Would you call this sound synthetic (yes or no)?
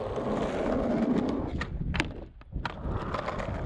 no